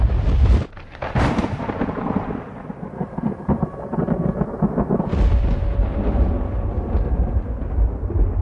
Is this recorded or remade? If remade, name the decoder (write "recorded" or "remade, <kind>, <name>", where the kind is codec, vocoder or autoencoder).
recorded